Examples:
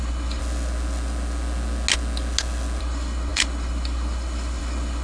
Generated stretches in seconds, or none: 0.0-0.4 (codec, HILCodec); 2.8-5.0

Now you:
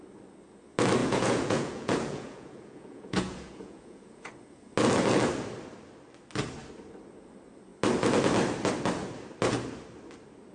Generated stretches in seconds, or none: 1.0-4.3 (vocoder, Vocos)

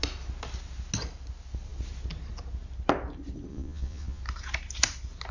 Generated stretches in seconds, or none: 3.5-4.2 (vocoder, Vocos)

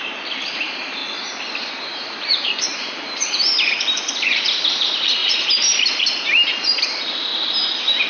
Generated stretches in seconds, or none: 0.0-1.0 (vocoder, BigVGAN v2); 1.7-7.3

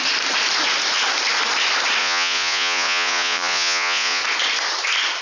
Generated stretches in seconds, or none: 2.0-4.2 (vocoder, Vocos)